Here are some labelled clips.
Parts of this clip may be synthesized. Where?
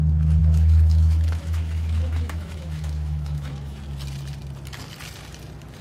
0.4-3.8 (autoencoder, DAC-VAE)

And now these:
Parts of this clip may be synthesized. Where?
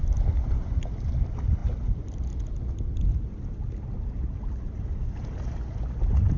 none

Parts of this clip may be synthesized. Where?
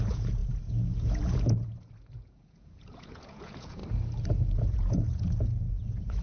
0.0-3.8 (vocoder, Vocos); 4.6-6.2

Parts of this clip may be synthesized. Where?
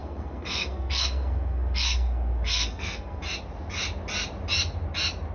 0.0-3.2 (codec, SNAC)